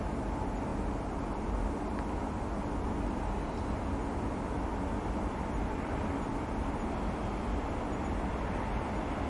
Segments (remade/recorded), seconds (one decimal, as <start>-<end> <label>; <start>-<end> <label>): 0.0-9.3 recorded

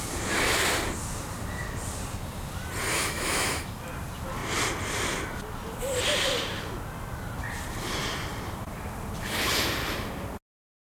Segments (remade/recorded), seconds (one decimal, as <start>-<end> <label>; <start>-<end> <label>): 0.0-2.9 recorded; 2.9-3.7 remade; 3.7-11.0 recorded

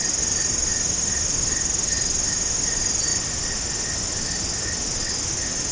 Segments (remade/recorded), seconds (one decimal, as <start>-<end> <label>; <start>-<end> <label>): 0.0-5.7 recorded

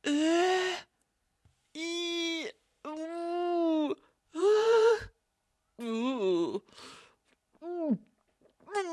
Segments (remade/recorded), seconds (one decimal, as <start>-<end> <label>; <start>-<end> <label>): 0.0-4.3 recorded; 4.3-4.9 remade; 4.9-8.9 recorded

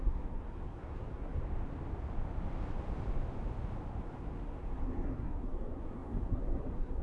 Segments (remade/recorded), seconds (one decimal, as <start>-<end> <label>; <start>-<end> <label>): 0.0-1.4 remade; 1.4-4.0 recorded; 4.0-7.0 remade

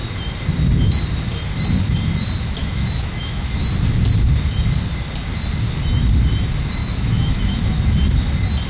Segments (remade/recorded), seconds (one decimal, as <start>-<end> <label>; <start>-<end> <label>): 0.0-2.6 recorded; 2.6-3.5 remade; 3.5-6.8 recorded; 6.8-7.6 remade; 7.6-8.7 recorded